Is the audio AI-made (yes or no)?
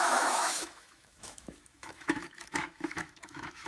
yes